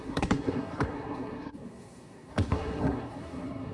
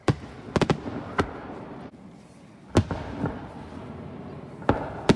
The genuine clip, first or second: second